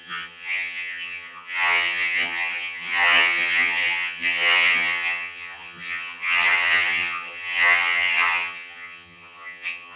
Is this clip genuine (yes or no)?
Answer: no